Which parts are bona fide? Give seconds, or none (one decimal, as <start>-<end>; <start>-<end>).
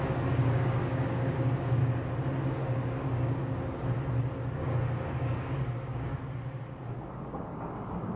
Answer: 1.8-2.5; 3.5-4.6; 6.1-7.1